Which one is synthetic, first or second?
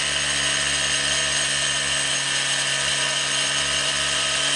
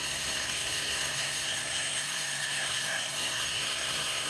second